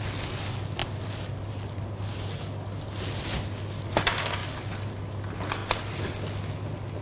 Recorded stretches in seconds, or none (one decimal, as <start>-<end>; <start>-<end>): 0.0-7.0